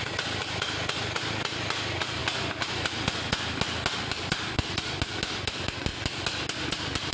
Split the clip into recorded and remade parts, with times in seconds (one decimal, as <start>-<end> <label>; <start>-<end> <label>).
0.0-7.1 recorded